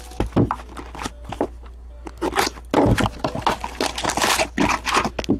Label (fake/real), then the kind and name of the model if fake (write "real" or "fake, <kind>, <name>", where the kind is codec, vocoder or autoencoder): real